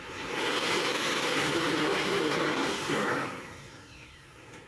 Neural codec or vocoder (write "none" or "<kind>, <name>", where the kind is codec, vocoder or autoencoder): codec, SNAC